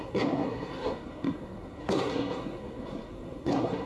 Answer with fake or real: fake